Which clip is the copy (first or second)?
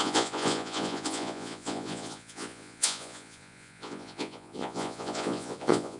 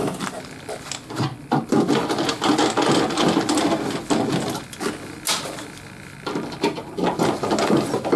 first